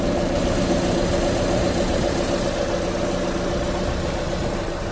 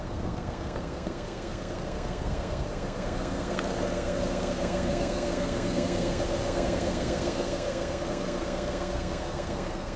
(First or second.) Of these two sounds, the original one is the first